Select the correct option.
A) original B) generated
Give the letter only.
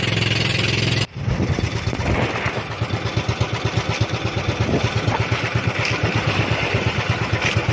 A